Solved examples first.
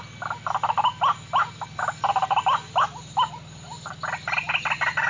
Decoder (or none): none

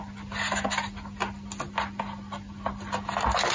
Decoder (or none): none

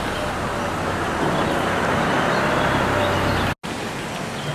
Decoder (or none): none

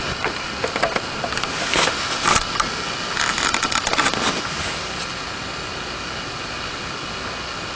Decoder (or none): none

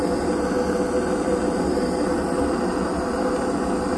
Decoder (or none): none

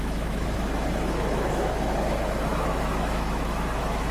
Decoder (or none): autoencoder, DAC-VAE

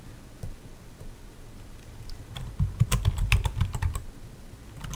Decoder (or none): none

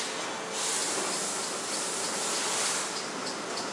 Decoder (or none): none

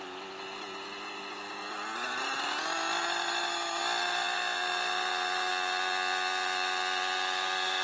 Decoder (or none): none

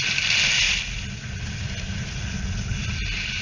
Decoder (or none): none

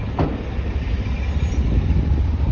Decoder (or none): none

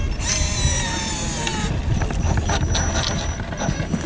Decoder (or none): none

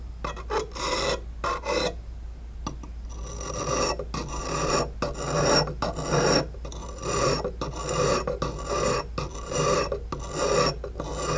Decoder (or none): none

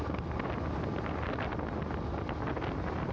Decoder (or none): none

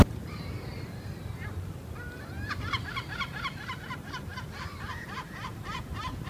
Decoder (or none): vocoder, BigVGAN v2